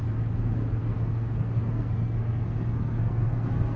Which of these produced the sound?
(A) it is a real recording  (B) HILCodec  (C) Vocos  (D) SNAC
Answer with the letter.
D